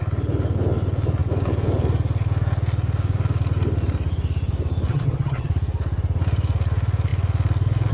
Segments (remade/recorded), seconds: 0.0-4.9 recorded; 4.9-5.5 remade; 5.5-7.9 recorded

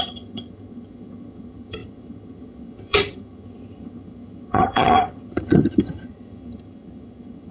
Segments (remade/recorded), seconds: 0.0-7.5 remade

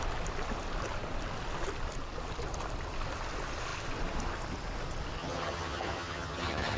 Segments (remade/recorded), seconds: 0.0-5.2 recorded; 5.2-6.8 remade

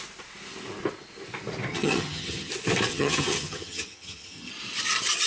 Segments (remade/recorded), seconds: 0.0-1.7 recorded; 1.7-2.5 remade; 2.5-2.9 recorded; 2.9-4.5 remade; 4.5-5.3 recorded

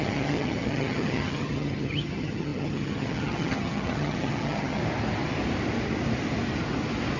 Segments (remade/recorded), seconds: 0.0-4.8 remade; 4.8-7.2 recorded

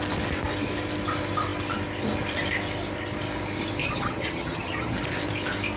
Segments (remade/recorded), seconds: 0.0-3.8 recorded; 3.8-5.0 remade; 5.0-5.8 recorded

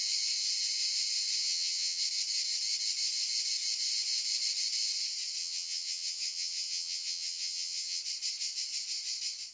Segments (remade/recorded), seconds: 0.0-1.4 recorded; 1.4-2.0 remade; 2.0-5.4 recorded; 5.4-8.0 remade; 8.0-9.5 recorded

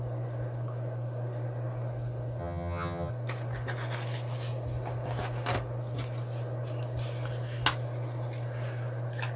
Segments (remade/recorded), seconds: 0.0-2.4 recorded; 2.4-3.1 remade; 3.1-9.4 recorded